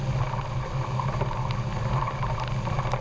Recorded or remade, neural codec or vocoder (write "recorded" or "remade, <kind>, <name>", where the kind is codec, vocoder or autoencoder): recorded